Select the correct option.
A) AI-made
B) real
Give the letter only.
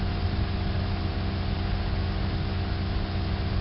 B